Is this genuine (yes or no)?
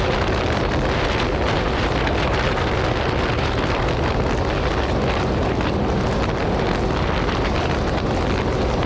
yes